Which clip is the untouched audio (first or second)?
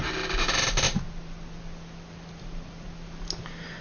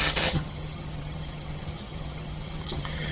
first